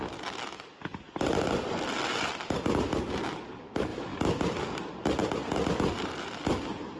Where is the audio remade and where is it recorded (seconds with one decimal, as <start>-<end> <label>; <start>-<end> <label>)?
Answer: 0.0-7.0 recorded